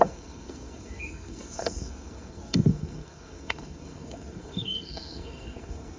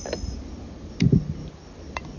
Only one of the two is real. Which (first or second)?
second